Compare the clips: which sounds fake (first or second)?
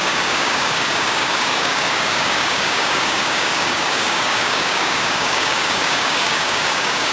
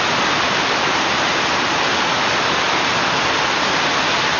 first